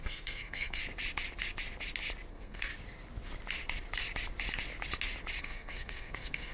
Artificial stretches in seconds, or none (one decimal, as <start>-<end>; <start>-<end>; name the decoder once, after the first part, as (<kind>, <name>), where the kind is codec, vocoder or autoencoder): 0.0-0.8 (codec, SNAC); 2.3-2.7; 5.4-6.5